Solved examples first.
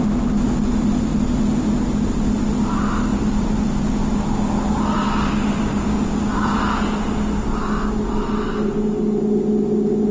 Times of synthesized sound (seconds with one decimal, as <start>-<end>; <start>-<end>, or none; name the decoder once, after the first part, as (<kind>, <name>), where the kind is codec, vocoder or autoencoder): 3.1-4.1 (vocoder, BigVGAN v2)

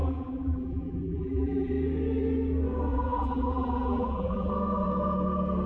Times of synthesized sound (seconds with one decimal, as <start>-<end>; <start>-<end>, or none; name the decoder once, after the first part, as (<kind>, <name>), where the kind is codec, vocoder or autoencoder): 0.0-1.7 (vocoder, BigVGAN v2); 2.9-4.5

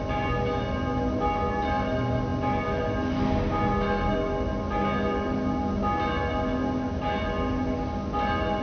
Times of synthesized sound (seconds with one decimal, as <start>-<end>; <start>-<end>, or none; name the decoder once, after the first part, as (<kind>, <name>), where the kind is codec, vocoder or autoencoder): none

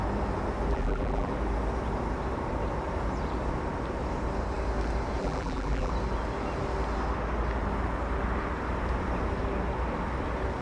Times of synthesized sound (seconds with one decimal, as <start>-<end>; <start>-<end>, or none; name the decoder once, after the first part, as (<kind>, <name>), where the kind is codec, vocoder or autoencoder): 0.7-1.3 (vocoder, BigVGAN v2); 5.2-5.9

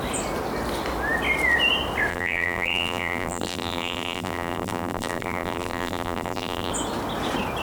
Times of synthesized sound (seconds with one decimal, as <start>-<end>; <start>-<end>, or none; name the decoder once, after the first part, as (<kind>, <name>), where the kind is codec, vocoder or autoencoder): 2.1-6.7 (vocoder, BigVGAN v2)

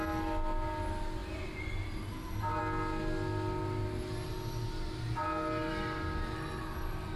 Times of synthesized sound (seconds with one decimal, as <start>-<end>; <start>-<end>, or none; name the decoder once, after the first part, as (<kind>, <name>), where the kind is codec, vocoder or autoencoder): none